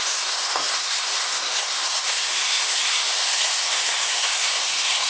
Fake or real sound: fake